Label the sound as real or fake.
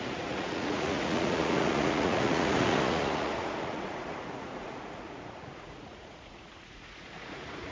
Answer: fake